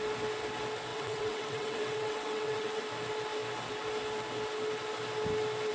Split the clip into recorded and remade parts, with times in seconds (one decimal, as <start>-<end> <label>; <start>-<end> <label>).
0.0-0.9 recorded; 0.9-2.8 remade; 2.8-5.7 recorded